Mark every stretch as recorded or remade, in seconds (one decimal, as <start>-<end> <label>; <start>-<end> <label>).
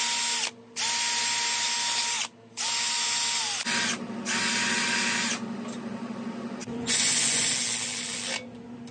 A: 0.0-6.6 recorded; 6.6-7.5 remade; 7.5-8.9 recorded